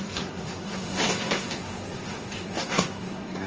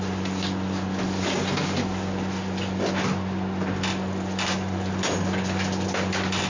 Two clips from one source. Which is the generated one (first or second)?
first